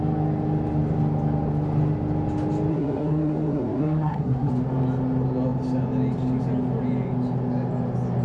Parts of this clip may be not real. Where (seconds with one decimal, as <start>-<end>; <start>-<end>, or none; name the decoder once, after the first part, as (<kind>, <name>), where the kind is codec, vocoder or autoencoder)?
2.7-4.5 (codec, SNAC)